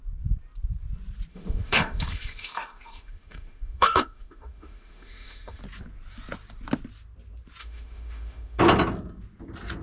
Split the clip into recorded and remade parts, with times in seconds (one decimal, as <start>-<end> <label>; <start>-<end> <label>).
0.0-1.3 recorded; 1.3-5.6 remade; 5.6-7.6 recorded; 7.6-8.6 remade; 8.6-9.8 recorded